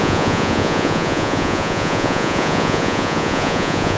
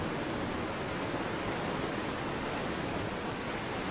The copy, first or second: first